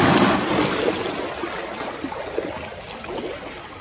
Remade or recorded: recorded